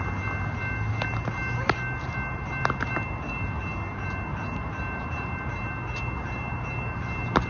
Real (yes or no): yes